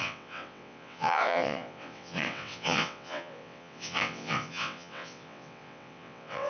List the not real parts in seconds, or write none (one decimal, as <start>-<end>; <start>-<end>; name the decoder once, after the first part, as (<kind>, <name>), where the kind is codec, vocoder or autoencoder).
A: 0.0-6.5 (vocoder, WaveNeXt)